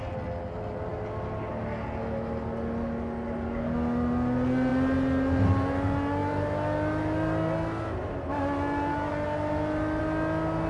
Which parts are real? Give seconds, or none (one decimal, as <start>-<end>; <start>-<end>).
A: 0.0-10.7